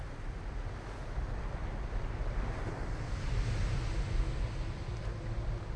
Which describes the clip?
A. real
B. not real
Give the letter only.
A